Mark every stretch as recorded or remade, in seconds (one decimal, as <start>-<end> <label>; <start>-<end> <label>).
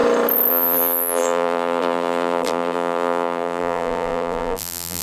0.0-0.5 recorded; 0.5-5.0 remade